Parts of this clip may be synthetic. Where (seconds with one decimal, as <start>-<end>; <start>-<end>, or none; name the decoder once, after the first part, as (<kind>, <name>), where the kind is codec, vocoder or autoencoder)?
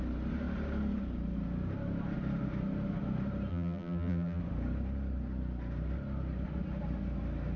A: 3.5-4.4 (vocoder, BigVGAN v2)